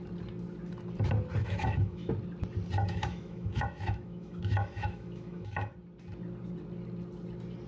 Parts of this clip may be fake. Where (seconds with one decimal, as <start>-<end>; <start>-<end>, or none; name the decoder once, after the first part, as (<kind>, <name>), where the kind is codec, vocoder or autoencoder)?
1.4-2.1 (autoencoder, DAC-VAE); 2.8-5.7